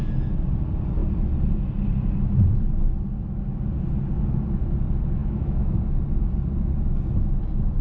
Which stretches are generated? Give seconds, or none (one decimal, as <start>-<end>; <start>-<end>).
5.2-5.8